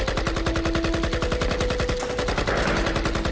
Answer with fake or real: real